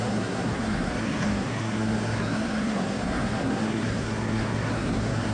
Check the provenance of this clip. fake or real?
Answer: fake